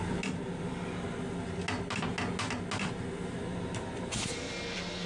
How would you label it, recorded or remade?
recorded